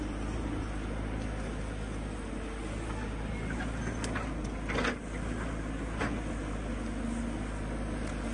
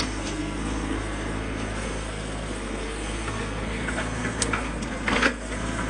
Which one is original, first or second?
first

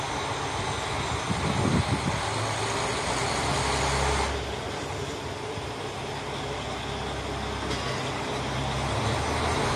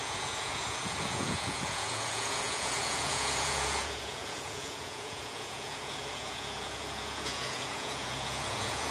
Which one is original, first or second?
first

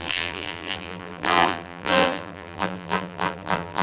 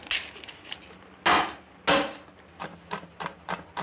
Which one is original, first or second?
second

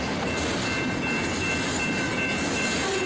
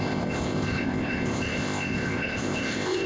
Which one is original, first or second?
first